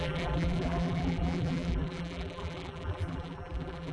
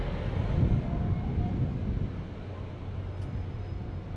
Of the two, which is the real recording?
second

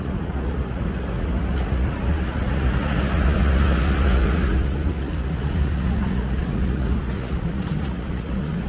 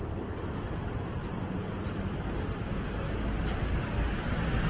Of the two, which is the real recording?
second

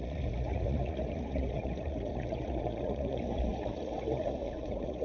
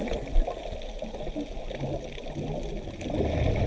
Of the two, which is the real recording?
second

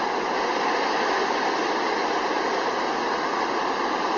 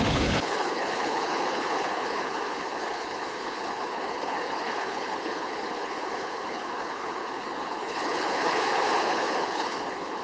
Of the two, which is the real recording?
first